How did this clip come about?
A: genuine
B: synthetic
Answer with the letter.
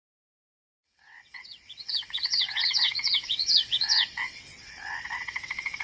B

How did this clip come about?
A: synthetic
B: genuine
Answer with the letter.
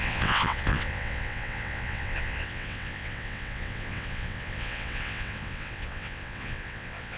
A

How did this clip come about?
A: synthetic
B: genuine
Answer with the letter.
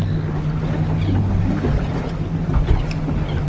B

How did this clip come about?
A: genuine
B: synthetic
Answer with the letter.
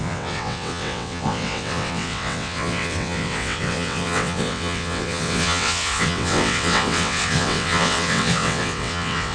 B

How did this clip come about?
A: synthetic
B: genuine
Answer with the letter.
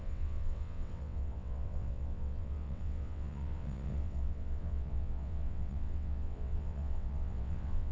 A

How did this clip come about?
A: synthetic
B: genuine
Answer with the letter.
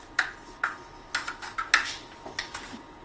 B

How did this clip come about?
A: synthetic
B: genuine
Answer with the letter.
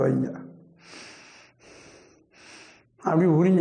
B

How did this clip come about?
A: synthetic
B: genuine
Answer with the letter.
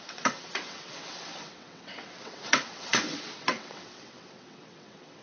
A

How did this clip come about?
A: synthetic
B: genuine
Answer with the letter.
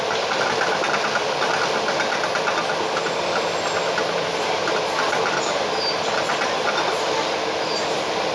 B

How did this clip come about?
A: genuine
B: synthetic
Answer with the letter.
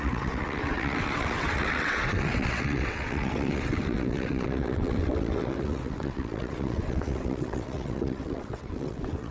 B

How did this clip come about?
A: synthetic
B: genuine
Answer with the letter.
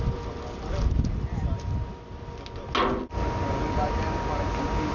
B